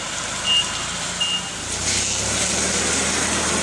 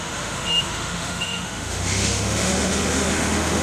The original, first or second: first